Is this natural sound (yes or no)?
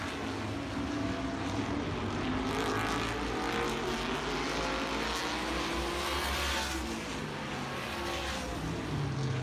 yes